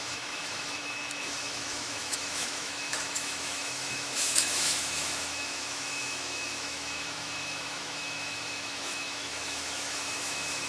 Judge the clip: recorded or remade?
remade